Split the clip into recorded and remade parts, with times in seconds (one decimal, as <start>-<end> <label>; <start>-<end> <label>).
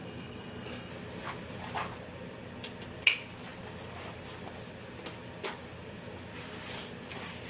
0.0-0.9 remade; 0.9-7.5 recorded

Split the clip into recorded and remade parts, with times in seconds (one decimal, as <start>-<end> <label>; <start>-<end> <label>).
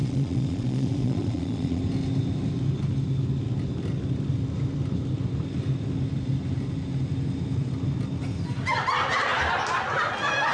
0.0-1.8 remade; 1.8-10.5 recorded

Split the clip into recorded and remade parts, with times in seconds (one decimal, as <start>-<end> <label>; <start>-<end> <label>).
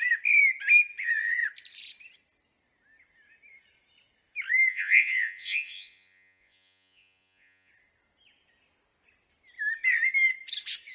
0.0-4.7 recorded; 4.7-7.7 remade; 7.7-10.9 recorded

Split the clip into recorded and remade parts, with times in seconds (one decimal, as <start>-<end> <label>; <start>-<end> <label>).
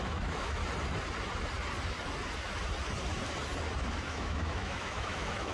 0.0-0.6 remade; 0.6-3.9 recorded; 3.9-5.5 remade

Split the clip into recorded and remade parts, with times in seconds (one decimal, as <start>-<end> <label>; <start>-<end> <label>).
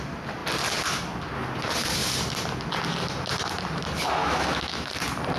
0.0-4.2 recorded; 4.2-4.9 remade; 4.9-5.4 recorded